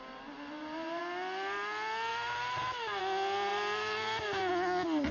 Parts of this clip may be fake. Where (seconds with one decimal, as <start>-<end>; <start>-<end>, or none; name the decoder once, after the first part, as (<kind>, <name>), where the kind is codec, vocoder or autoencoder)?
0.0-1.0 (vocoder, BigVGAN v2); 2.1-3.0; 3.5-4.5